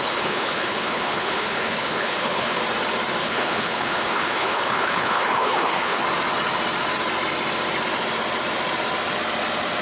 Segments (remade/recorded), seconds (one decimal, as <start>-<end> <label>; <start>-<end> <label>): 0.0-2.6 remade; 2.6-3.2 recorded; 3.2-6.0 remade; 6.0-9.8 recorded